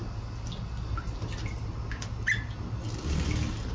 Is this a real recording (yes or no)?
yes